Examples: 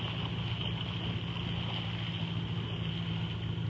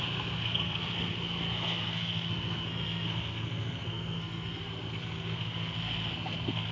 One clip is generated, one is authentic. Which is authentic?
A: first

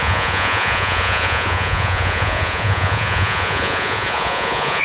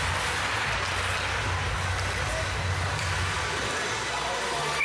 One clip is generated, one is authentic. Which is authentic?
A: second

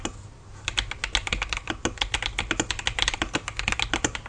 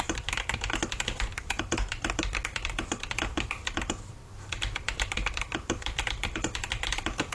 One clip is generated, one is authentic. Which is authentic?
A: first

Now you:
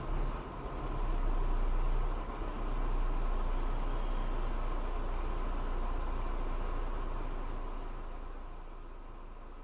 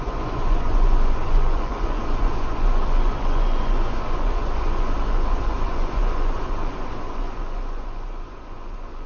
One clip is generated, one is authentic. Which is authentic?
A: first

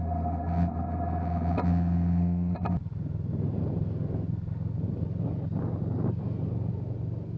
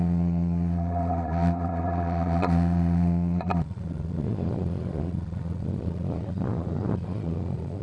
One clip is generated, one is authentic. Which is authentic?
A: first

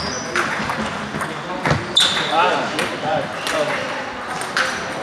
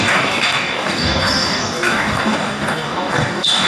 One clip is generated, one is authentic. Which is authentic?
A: first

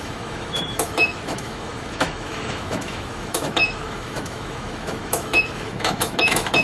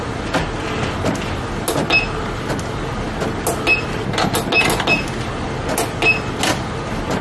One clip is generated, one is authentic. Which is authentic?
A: second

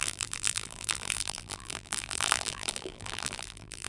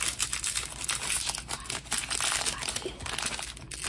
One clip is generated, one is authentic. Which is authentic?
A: second